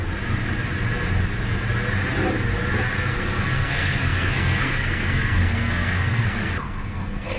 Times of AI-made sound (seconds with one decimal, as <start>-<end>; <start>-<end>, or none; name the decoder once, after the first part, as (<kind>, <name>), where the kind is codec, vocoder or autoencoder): 3.1-7.4 (codec, SNAC)